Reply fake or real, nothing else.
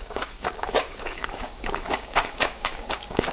fake